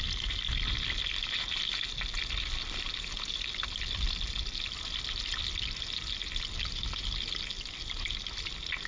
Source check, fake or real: real